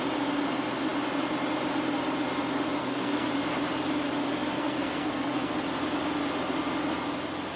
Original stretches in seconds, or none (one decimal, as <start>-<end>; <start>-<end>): 0.0-2.8; 3.3-4.5; 5.5-7.6